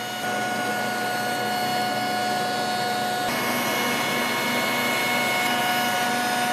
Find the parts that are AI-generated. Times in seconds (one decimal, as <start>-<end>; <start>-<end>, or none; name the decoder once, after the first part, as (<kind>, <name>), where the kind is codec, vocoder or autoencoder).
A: none